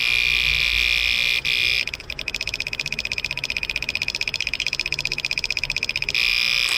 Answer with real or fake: real